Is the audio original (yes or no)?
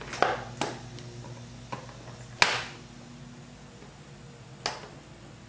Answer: yes